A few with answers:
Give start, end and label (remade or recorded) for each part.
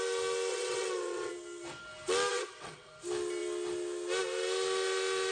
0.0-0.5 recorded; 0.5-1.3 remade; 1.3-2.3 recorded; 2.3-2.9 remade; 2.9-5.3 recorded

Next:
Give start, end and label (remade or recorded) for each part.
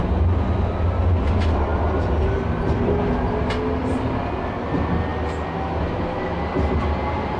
0.0-7.4 recorded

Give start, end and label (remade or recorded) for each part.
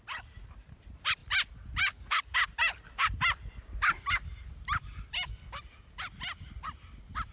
0.0-7.3 recorded